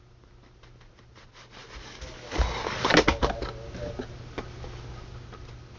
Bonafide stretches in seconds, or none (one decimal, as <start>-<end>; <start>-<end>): 0.0-5.8